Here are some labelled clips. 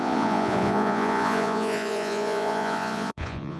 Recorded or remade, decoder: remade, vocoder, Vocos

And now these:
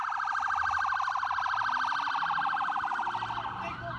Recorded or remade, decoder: recorded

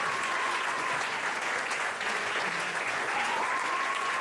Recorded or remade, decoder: remade, vocoder, Vocos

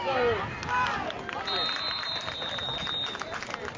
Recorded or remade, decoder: recorded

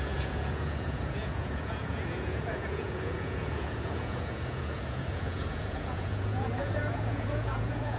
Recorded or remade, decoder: remade, vocoder, Vocos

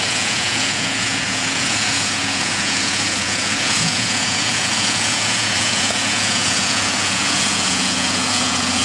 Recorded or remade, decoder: remade, vocoder, Vocos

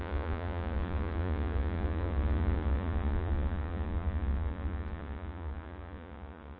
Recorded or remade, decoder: remade, vocoder, Vocos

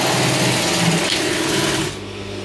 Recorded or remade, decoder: recorded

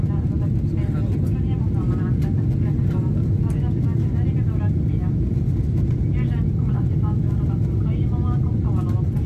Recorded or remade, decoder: recorded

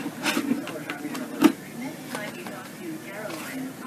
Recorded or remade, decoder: recorded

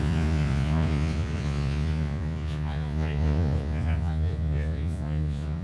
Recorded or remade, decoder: remade, vocoder, Vocos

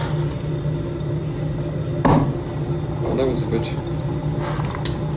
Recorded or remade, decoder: recorded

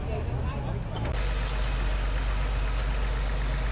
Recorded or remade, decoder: recorded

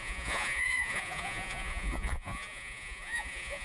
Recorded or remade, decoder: remade, vocoder, Vocos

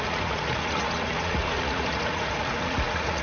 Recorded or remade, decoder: remade, vocoder, Vocos